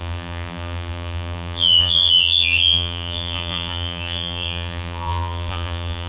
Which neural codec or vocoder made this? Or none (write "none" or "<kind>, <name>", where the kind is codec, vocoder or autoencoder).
vocoder, BigVGAN v2